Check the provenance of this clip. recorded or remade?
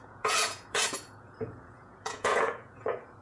remade